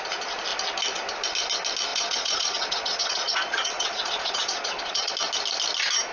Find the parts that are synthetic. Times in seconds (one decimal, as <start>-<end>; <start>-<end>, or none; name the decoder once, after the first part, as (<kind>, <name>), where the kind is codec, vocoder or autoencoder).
1.9-5.1 (vocoder, Vocos)